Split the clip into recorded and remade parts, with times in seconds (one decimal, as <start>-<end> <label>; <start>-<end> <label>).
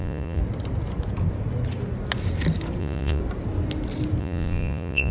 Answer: 0.0-0.4 remade; 0.4-2.8 recorded; 2.8-3.2 remade; 3.2-4.2 recorded; 4.2-5.1 remade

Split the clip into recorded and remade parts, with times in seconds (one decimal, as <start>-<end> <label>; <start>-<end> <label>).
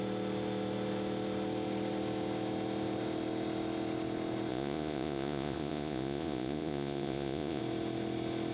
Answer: 0.0-4.5 recorded; 4.5-7.6 remade; 7.6-8.5 recorded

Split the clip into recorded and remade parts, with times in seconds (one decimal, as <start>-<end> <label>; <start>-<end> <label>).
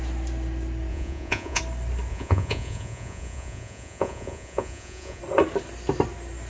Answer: 0.0-0.9 recorded; 0.9-1.6 remade; 1.6-2.1 recorded; 2.1-5.2 remade; 5.2-6.5 recorded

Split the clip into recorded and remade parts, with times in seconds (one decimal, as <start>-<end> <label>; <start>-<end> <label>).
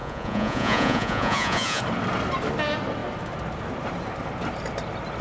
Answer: 0.0-1.8 remade; 1.8-5.2 recorded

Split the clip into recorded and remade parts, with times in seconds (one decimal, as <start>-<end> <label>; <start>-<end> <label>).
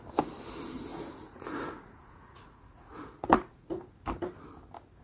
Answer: 0.0-0.9 recorded; 0.9-3.9 remade; 3.9-5.0 recorded